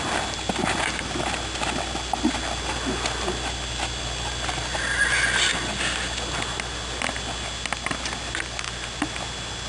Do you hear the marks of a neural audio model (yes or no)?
no